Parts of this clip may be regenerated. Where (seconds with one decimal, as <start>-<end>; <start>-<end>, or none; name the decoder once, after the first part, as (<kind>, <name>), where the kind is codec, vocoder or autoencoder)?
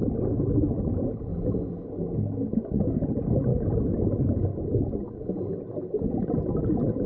none